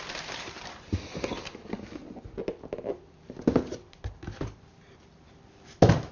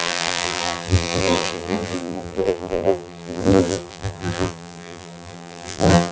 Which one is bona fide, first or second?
first